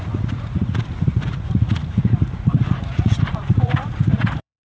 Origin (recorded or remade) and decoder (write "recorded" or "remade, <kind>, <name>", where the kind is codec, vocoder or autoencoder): remade, vocoder, Vocos